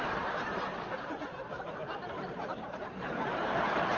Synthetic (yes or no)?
yes